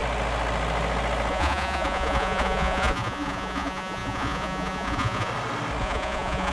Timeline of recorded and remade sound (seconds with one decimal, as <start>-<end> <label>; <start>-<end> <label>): 0.0-1.3 recorded; 1.3-5.3 remade; 5.3-5.8 recorded; 5.8-6.5 remade